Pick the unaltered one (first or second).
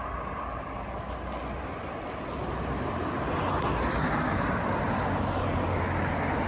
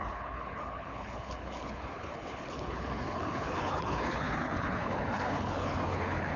first